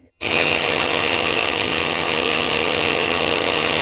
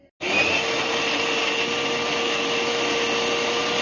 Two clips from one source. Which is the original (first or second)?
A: second